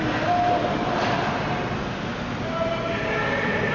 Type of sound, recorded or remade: recorded